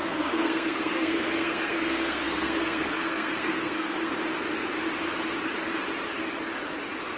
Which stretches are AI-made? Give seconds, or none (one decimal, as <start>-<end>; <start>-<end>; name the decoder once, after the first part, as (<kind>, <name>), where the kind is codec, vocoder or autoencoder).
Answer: 0.0-4.1 (codec, SNAC)